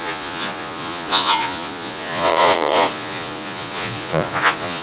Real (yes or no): no